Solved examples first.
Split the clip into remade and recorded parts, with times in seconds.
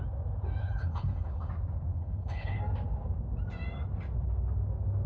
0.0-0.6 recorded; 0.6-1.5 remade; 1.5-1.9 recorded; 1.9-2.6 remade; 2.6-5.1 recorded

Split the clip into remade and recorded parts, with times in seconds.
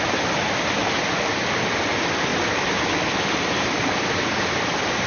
0.0-5.1 recorded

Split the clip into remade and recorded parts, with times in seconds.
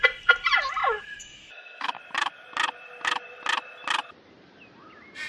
0.0-1.1 recorded; 1.1-2.0 remade; 2.0-5.3 recorded